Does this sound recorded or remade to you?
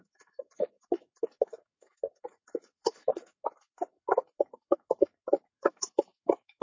remade